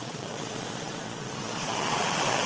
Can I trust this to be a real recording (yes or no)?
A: no